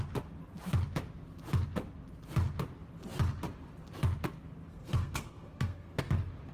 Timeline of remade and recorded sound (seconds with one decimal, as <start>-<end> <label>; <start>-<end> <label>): 0.0-4.7 recorded; 4.7-6.0 remade; 6.0-6.5 recorded